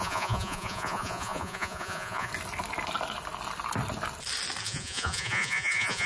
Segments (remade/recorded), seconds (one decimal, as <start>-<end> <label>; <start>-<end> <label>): 0.0-2.3 remade; 2.3-4.6 recorded; 4.6-6.1 remade